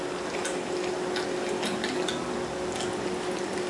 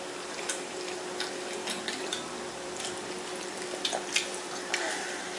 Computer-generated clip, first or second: second